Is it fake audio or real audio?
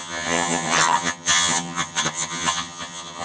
fake